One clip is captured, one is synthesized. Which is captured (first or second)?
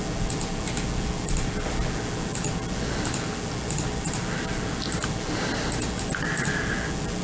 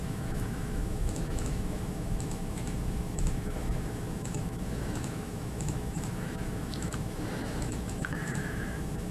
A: first